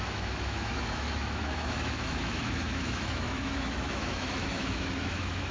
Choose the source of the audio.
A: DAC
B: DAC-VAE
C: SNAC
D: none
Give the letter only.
B